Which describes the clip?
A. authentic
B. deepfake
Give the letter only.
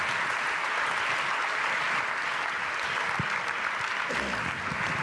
A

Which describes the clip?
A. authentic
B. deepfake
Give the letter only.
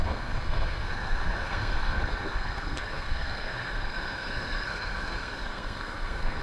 B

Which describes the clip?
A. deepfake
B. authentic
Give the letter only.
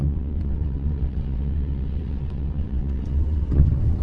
A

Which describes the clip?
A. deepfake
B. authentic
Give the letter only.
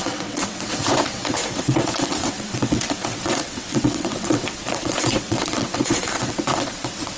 A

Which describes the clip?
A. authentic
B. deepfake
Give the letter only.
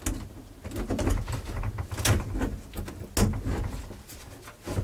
A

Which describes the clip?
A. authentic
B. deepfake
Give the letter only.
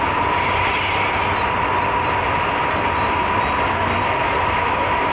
A